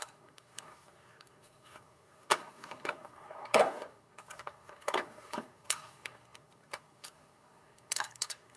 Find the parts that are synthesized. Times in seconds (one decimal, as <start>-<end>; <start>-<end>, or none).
0.0-8.6